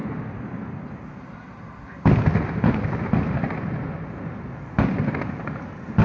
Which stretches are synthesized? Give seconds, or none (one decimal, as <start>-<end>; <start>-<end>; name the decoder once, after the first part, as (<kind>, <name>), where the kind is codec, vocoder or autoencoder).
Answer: none